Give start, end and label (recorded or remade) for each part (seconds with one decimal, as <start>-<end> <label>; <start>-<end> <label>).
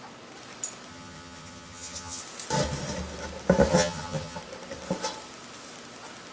0.0-0.9 recorded; 0.9-2.2 remade; 2.2-3.7 recorded; 3.7-4.4 remade; 4.4-6.3 recorded